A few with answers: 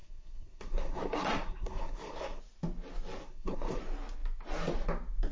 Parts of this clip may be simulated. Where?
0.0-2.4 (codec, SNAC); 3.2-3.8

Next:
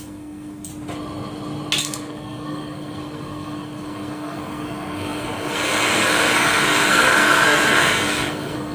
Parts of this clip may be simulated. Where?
0.0-0.7 (codec, SNAC); 1.8-8.7